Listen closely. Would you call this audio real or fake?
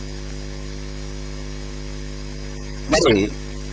fake